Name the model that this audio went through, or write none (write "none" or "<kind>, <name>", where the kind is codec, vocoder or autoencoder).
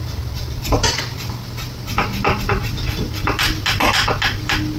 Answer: none